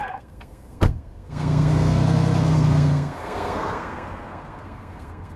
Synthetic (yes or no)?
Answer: yes